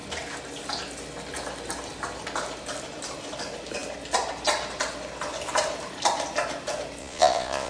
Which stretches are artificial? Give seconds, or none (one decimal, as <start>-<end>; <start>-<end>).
7.0-7.7

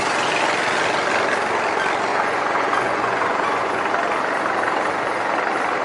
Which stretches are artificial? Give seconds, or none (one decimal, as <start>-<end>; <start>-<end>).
2.1-3.8

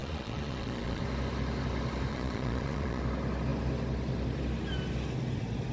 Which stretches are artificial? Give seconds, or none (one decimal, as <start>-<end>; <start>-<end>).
0.0-1.0; 2.1-3.0

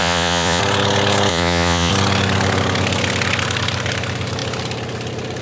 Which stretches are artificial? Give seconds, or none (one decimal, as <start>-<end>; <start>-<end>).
0.0-0.6; 1.3-1.9